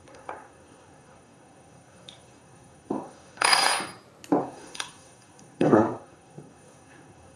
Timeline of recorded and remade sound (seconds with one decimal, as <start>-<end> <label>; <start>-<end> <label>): 0.0-3.7 remade; 3.7-4.4 recorded; 4.4-7.4 remade